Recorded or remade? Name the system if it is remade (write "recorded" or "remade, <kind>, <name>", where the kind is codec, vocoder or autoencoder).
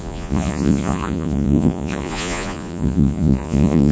remade, vocoder, Vocos